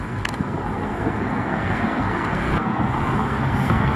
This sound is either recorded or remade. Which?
remade